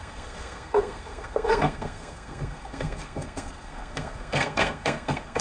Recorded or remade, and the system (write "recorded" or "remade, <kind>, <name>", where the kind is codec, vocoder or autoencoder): remade, codec, SNAC